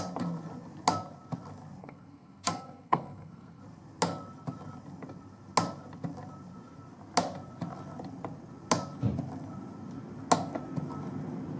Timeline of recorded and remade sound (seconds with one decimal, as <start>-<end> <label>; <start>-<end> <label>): 0.0-1.8 recorded; 1.8-3.6 remade; 3.6-11.6 recorded